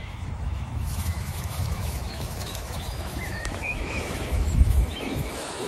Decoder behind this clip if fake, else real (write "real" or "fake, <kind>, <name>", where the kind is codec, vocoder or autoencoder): fake, autoencoder, DAC-VAE